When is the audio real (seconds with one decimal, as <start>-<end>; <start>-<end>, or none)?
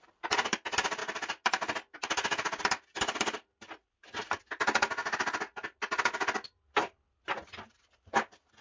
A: 0.0-8.6